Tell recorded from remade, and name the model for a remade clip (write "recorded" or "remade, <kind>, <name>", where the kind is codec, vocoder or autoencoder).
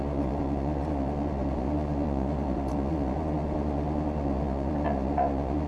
remade, vocoder, Vocos